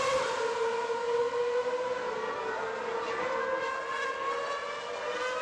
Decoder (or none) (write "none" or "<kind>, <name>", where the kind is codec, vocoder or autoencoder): none